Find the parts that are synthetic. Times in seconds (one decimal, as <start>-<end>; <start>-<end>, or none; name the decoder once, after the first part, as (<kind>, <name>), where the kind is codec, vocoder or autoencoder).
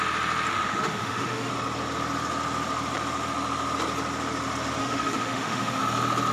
0.5-1.5 (autoencoder, DAC-VAE); 4.8-5.8